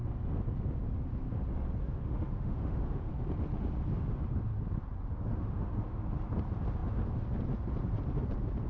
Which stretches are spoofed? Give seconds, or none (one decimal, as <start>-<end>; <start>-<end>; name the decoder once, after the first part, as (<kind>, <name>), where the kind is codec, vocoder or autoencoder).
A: 1.8-3.1 (autoencoder, DAC-VAE); 5.3-6.0